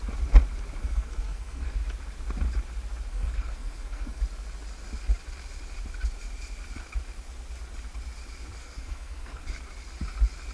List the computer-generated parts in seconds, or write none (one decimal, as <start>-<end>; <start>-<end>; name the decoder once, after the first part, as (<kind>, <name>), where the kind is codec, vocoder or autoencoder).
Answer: 0.8-1.8 (codec, SNAC); 3.1-4.2; 8.6-9.4